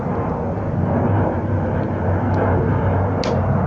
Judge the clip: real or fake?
real